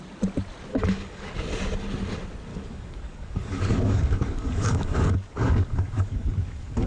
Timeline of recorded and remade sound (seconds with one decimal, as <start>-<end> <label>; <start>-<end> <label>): 0.0-0.7 recorded; 0.7-1.3 remade; 1.3-2.5 recorded; 2.5-6.9 remade